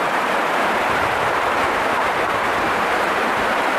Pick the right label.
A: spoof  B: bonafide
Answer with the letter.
A